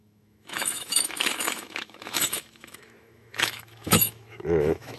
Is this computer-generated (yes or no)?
yes